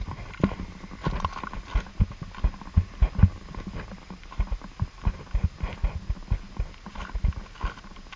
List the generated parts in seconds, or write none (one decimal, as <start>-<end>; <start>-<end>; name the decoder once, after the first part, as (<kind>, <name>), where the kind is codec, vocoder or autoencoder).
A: none